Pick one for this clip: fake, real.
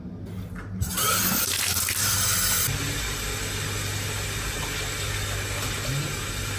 real